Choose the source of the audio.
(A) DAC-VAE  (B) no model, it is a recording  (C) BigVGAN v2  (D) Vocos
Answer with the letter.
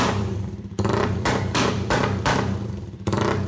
C